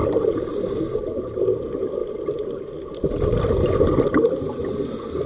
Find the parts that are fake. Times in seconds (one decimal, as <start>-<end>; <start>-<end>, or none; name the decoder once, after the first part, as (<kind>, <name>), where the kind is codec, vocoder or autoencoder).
0.0-1.4 (vocoder, BigVGAN v2); 2.0-3.2